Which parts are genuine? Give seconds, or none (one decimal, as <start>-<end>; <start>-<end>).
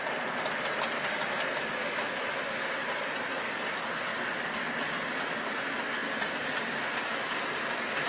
0.0-1.8; 2.3-8.1